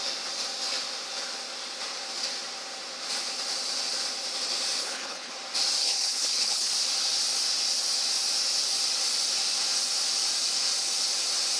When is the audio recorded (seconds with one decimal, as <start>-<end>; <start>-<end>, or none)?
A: 0.0-4.8; 5.3-5.8; 6.7-11.6